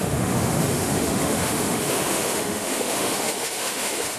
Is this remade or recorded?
remade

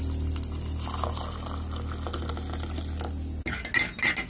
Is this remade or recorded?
recorded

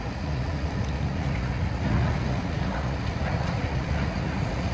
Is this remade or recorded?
remade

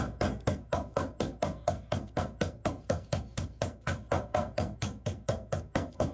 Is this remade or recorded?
remade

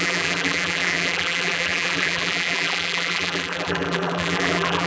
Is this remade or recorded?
remade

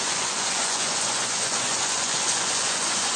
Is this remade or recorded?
remade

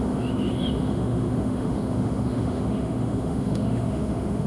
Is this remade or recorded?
remade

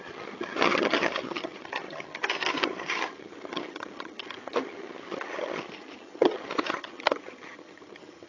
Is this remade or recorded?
remade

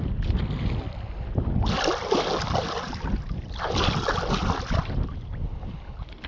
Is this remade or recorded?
recorded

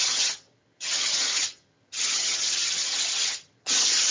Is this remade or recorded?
remade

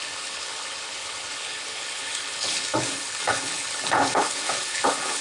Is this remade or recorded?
remade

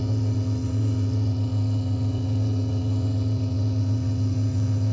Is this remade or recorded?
remade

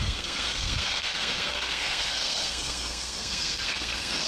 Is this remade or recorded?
remade